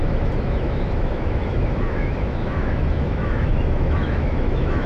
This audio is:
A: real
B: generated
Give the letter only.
B